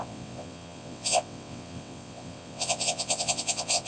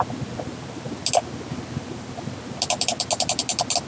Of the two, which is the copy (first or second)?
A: first